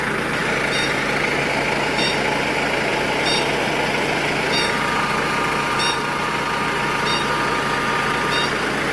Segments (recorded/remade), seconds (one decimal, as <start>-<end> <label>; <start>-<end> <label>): 0.0-8.9 recorded